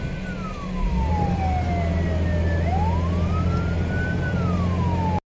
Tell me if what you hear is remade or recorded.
recorded